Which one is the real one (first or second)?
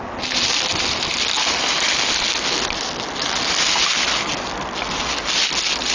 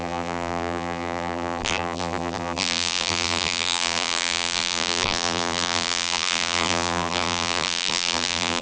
first